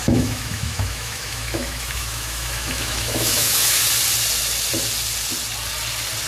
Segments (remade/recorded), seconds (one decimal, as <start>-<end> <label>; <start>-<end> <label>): 0.0-3.8 remade; 3.8-6.3 recorded